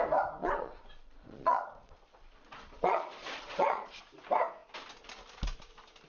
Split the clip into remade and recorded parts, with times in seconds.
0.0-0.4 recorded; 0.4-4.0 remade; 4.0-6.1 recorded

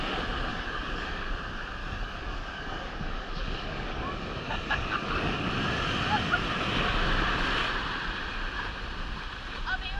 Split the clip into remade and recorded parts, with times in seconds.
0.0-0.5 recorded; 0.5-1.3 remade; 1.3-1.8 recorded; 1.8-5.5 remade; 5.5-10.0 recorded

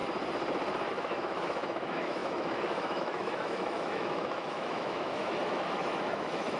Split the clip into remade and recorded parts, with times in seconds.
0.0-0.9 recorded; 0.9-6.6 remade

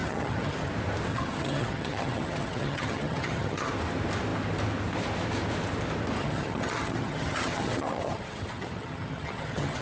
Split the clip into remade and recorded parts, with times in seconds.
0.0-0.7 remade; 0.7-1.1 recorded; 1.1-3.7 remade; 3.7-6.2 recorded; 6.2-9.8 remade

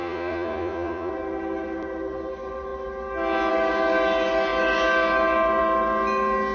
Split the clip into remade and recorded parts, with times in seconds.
0.0-1.1 remade; 1.1-6.5 recorded

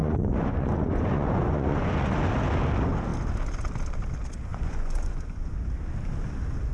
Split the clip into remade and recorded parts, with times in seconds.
0.0-2.1 remade; 2.1-4.5 recorded; 4.5-5.4 remade; 5.4-6.7 recorded